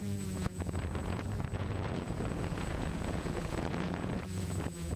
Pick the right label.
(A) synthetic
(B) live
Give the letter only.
A